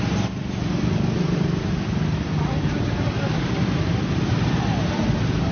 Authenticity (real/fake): fake